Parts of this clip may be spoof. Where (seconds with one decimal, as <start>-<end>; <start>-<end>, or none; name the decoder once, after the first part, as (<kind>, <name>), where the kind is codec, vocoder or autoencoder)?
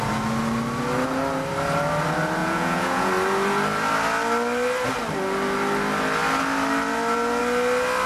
2.4-3.1 (vocoder, Vocos)